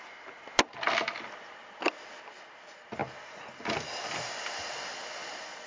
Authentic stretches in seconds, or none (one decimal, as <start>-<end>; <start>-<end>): 0.0-5.7